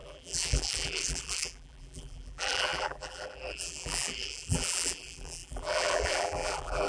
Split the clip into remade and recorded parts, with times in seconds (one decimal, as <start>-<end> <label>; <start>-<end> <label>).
0.0-6.9 remade

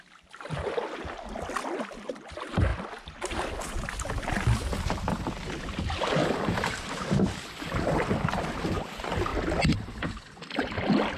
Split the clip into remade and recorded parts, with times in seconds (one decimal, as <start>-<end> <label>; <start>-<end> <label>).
0.0-6.2 recorded; 6.2-6.9 remade; 6.9-11.2 recorded

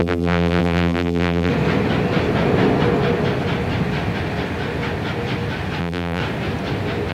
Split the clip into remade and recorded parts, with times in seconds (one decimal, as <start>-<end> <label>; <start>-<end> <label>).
0.0-1.5 remade; 1.5-5.8 recorded; 5.8-6.2 remade; 6.2-7.1 recorded